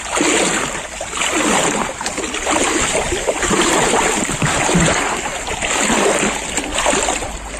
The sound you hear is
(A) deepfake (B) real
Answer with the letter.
B